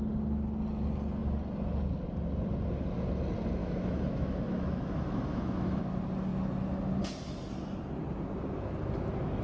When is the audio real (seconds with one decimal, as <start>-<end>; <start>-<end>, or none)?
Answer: 0.0-3.6; 5.8-9.4